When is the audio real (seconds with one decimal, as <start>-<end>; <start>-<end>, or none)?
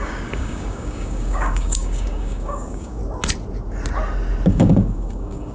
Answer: 3.0-4.5